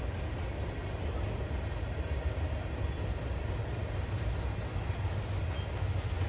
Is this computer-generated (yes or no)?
no